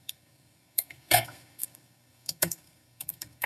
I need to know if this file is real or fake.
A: fake